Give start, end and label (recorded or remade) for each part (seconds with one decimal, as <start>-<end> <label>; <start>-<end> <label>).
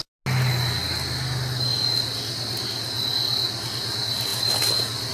0.0-5.1 recorded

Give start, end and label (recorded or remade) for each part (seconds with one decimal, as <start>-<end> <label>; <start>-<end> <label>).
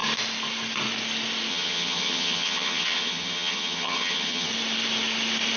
0.0-1.5 recorded; 1.5-4.5 remade; 4.5-5.6 recorded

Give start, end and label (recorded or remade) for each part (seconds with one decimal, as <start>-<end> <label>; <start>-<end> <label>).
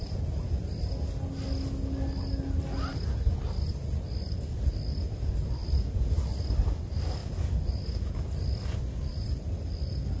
0.0-10.2 recorded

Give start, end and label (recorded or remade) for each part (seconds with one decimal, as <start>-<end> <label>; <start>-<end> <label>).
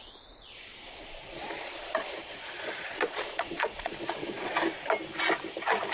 0.0-1.0 recorded; 1.0-4.5 remade; 4.5-5.9 recorded